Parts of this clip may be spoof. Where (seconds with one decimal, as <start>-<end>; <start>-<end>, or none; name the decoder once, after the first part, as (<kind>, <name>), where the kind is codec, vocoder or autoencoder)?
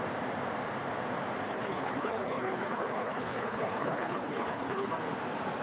1.5-4.9 (codec, HILCodec)